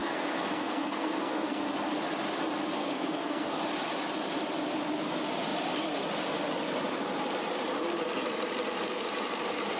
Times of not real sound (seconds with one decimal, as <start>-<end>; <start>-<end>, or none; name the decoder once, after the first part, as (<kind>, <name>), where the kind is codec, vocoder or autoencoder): 0.0-1.6 (codec, SNAC); 2.8-3.6